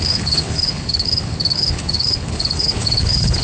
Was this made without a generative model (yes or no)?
no